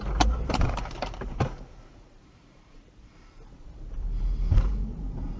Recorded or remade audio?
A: remade